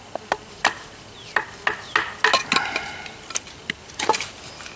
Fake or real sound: real